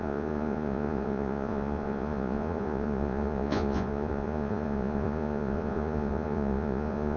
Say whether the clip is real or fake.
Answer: fake